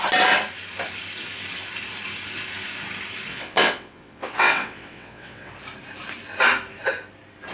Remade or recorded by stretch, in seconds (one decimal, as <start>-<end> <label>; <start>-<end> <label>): 0.0-3.3 recorded; 3.3-5.5 remade; 5.5-7.5 recorded